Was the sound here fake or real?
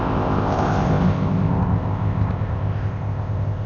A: fake